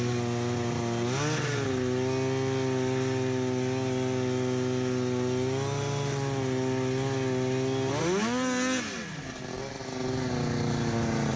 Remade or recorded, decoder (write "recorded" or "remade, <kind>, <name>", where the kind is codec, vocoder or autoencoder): recorded